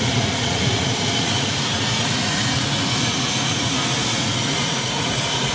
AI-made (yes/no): yes